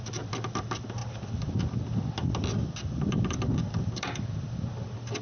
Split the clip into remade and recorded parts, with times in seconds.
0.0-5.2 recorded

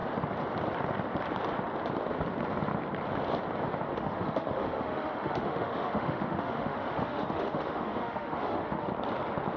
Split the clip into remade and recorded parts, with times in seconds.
0.0-3.9 recorded; 3.9-8.9 remade; 8.9-9.6 recorded

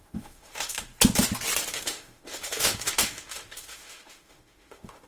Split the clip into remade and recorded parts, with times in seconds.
0.0-0.9 remade; 0.9-1.7 recorded; 1.7-5.1 remade

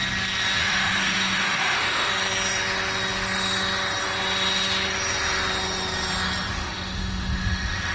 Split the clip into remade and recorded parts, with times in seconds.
0.0-0.6 recorded; 0.6-2.1 remade; 2.1-6.5 recorded; 6.5-7.9 remade

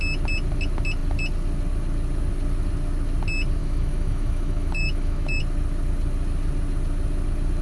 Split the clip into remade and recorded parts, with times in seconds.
0.0-3.6 recorded; 3.6-5.4 remade; 5.4-7.6 recorded